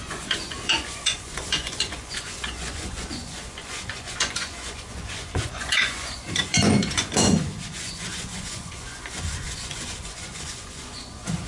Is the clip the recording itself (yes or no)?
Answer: no